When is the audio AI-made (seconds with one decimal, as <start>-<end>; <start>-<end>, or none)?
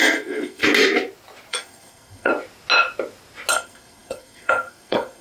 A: 0.0-0.6; 1.5-2.3; 3.5-5.2